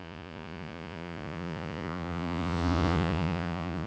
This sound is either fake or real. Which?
fake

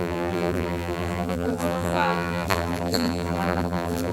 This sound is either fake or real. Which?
fake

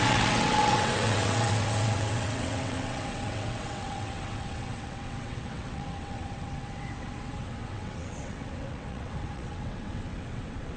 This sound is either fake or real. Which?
fake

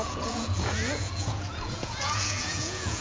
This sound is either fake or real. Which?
fake